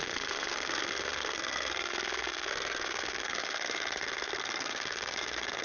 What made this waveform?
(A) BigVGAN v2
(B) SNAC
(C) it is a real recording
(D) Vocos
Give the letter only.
B